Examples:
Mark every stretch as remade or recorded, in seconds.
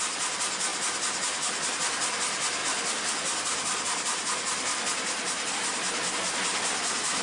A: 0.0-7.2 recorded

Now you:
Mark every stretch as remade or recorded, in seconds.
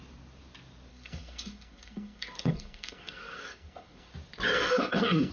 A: 0.0-0.9 recorded; 0.9-4.1 remade; 4.1-4.5 recorded; 4.5-5.3 remade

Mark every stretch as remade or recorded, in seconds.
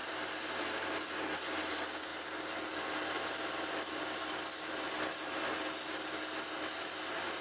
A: 0.0-1.1 remade; 1.1-2.1 recorded; 2.1-5.2 remade; 5.2-7.4 recorded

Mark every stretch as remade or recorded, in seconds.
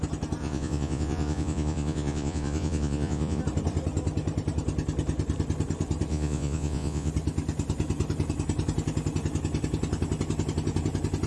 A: 0.0-0.4 recorded; 0.4-3.4 remade; 3.4-6.1 recorded; 6.1-7.1 remade; 7.1-11.3 recorded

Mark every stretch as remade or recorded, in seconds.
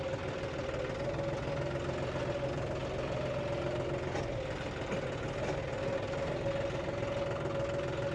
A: 0.0-8.1 recorded